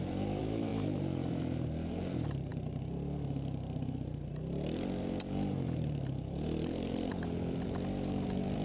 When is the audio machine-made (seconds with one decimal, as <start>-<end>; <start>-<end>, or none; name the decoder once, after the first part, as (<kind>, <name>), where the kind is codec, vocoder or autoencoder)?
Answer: 0.0-8.6 (vocoder, BigVGAN v2)